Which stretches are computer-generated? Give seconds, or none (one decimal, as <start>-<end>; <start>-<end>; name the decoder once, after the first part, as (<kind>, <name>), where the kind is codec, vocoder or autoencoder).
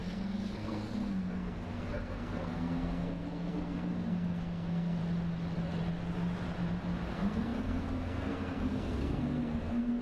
0.0-5.0 (codec, SNAC); 7.1-10.0